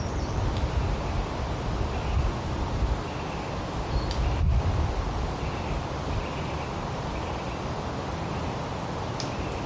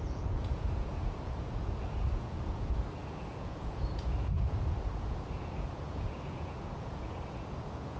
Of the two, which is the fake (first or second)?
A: second